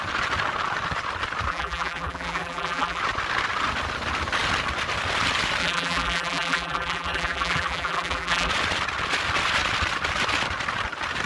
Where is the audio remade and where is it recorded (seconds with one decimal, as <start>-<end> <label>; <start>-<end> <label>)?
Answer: 0.0-1.5 recorded; 1.5-3.0 remade; 3.0-5.6 recorded; 5.6-8.5 remade; 8.5-11.3 recorded